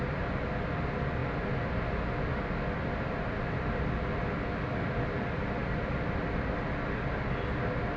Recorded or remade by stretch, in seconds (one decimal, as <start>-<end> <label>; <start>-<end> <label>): 0.0-8.0 recorded